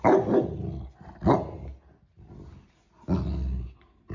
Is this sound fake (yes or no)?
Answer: no